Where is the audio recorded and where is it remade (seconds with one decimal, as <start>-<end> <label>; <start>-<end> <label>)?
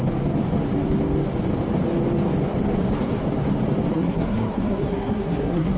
0.0-3.9 recorded; 3.9-5.8 remade